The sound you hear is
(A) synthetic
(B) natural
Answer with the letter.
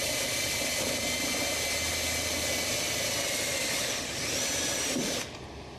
B